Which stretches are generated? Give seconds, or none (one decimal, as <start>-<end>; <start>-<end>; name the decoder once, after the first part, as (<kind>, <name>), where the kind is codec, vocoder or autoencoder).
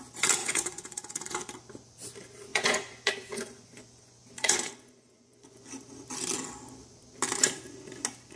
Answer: 0.4-1.4 (vocoder, Vocos); 2.5-5.7